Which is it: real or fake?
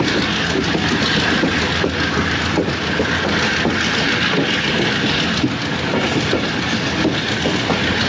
real